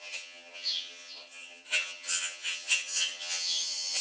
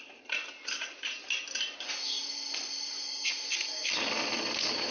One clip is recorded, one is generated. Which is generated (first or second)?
first